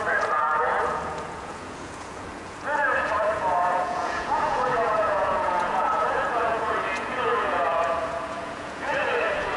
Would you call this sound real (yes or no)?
no